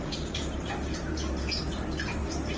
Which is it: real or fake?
fake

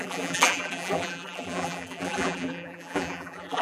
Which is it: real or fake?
fake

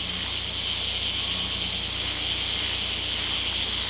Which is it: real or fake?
real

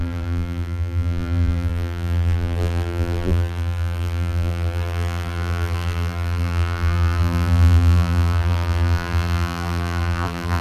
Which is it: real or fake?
fake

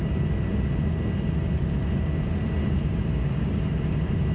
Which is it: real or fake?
real